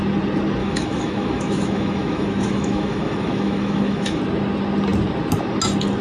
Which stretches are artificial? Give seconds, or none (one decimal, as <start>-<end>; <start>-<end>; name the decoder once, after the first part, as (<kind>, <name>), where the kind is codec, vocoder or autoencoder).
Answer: 0.6-4.2 (autoencoder, DAC-VAE)